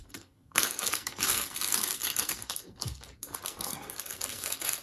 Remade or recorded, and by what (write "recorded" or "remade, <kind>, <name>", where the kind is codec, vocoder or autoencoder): remade, codec, SNAC